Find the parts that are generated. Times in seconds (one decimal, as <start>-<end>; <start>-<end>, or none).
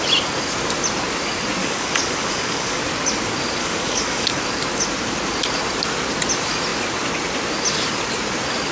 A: 1.6-2.8; 3.6-4.4